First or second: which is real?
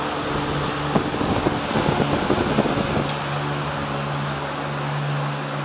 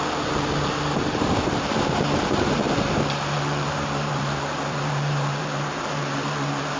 first